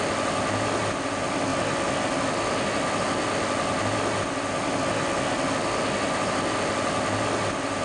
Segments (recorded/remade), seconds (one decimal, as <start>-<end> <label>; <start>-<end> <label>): 0.0-7.8 recorded